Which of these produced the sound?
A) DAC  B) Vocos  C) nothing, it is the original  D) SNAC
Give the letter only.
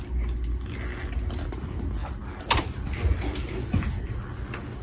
C